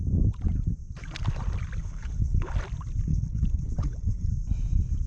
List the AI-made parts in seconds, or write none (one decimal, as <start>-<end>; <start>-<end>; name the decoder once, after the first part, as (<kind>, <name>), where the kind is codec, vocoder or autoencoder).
1.8-2.5 (codec, HILCodec); 3.1-4.3